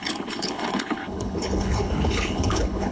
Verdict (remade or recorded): remade